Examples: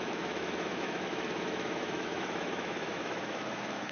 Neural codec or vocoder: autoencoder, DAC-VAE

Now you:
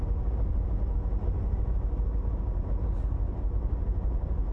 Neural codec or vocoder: none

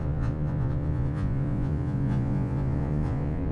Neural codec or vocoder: vocoder, Vocos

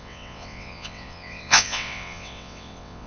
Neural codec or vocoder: vocoder, WaveNeXt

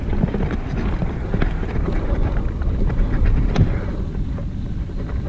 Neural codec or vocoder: none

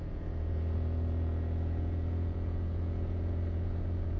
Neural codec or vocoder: vocoder, Vocos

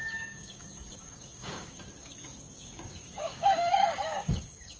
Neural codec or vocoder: codec, DAC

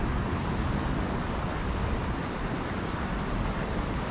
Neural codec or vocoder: none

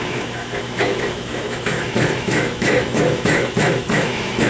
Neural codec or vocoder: autoencoder, DAC-VAE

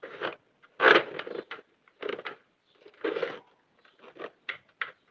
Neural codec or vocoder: none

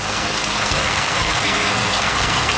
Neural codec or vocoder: codec, SNAC